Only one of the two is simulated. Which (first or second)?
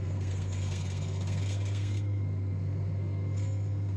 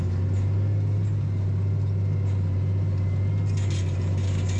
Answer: first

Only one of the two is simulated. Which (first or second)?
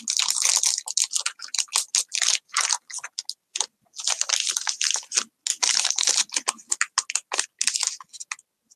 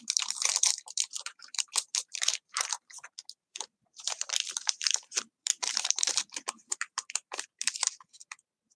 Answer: second